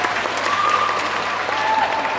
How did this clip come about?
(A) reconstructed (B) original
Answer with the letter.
B